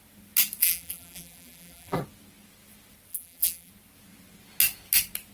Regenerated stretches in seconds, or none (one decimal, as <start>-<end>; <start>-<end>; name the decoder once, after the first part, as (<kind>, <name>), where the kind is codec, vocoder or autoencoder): 0.6-2.0 (vocoder, BigVGAN v2); 3.1-3.7